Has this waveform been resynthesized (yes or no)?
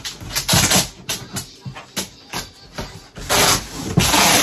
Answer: no